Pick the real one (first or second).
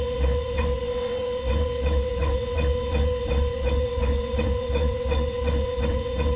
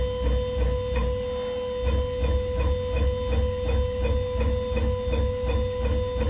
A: second